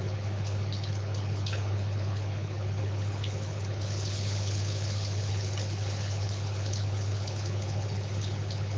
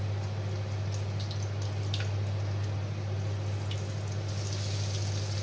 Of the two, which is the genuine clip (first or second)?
second